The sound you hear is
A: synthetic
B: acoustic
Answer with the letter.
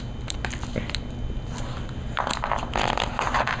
B